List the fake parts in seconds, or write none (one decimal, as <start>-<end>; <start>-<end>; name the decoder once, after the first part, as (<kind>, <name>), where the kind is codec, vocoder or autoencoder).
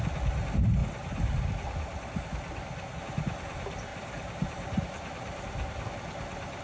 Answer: 3.9-5.9 (vocoder, BigVGAN v2)